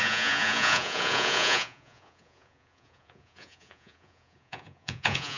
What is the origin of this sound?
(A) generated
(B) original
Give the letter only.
A